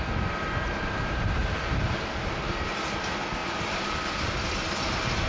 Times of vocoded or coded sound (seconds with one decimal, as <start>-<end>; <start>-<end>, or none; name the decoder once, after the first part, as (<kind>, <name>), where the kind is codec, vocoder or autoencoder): 1.4-1.9 (vocoder, BigVGAN v2); 3.4-4.0

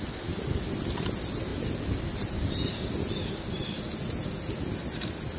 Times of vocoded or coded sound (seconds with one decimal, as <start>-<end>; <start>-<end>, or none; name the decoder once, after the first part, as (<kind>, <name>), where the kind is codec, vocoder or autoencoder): none

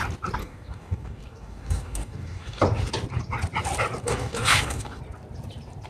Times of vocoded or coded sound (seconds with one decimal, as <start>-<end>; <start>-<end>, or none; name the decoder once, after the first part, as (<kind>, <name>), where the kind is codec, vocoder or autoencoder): 0.4-2.6 (codec, DAC); 4.0-5.0